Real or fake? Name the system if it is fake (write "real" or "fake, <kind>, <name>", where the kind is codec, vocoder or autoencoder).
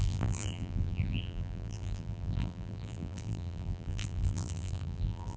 fake, vocoder, BigVGAN v2